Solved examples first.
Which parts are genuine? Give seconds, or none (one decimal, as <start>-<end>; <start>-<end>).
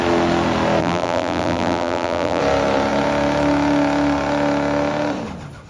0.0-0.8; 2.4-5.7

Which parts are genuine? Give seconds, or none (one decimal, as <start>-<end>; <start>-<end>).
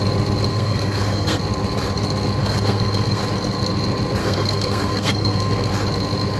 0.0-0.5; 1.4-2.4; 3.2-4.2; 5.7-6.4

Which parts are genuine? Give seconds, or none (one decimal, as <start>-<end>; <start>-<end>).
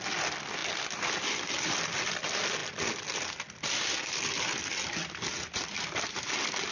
0.0-6.7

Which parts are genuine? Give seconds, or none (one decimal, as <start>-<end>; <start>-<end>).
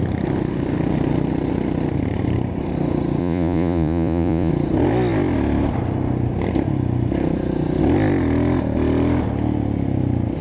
0.0-3.2; 4.5-10.4